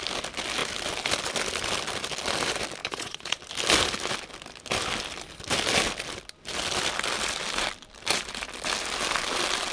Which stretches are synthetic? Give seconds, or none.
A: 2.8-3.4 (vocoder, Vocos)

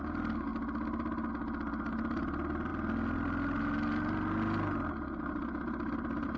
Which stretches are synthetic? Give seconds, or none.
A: none

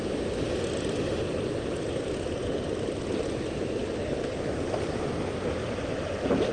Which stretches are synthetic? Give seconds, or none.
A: none